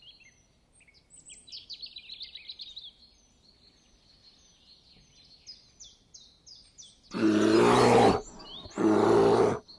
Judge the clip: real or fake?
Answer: real